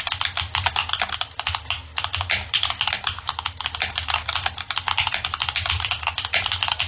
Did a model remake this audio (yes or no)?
no